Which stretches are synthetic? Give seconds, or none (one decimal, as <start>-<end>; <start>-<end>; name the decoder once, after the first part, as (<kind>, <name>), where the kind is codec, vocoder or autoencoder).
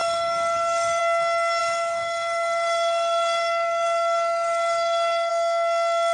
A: 0.0-1.0 (codec, DAC); 1.6-5.3